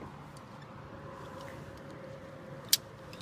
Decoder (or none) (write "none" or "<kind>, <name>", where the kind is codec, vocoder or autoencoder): none